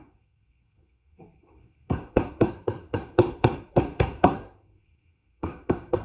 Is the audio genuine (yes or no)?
no